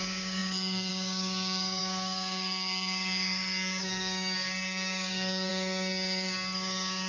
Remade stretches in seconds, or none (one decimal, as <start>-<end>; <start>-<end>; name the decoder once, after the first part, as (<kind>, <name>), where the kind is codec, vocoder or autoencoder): 0.0-7.1 (codec, DAC)